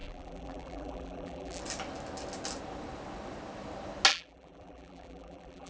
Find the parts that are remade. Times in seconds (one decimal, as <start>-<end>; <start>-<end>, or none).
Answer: 0.0-1.6; 4.1-5.7